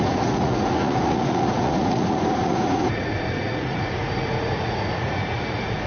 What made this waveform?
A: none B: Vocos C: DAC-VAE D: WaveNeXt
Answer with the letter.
B